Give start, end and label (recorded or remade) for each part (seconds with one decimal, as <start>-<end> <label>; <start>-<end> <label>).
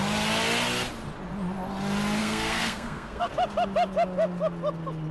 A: 0.0-2.2 recorded; 2.2-3.3 remade; 3.3-5.1 recorded